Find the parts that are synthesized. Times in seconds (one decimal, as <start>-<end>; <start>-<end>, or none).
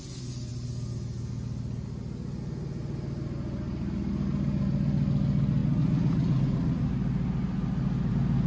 none